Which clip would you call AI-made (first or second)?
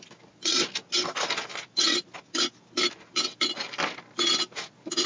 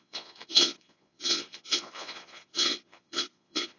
second